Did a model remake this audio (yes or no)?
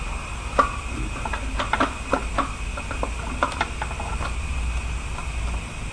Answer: no